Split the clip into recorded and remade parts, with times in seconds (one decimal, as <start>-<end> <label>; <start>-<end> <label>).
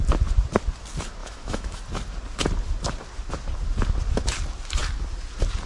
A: 0.0-1.2 recorded; 1.2-1.8 remade; 1.8-5.7 recorded